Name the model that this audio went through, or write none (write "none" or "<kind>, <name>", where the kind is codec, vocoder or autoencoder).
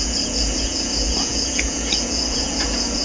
vocoder, Vocos